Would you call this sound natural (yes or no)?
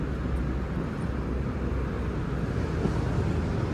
yes